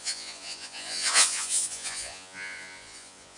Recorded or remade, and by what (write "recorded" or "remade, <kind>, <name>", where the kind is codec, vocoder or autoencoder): remade, vocoder, Vocos